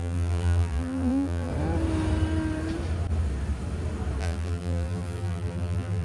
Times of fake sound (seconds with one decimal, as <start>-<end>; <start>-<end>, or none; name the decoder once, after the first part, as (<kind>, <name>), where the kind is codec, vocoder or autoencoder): 0.0-1.5 (vocoder, BigVGAN v2); 4.2-6.0